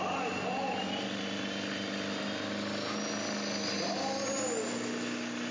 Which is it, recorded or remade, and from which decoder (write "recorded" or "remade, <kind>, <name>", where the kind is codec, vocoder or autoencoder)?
recorded